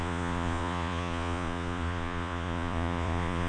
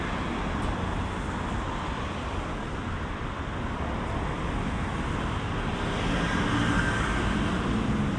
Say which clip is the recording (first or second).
second